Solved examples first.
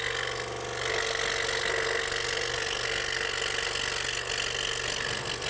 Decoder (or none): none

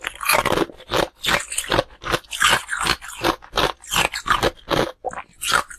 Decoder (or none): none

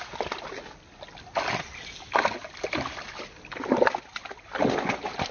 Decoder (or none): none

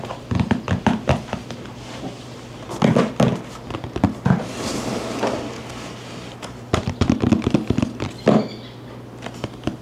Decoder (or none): none